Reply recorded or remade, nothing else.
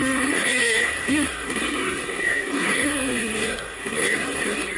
remade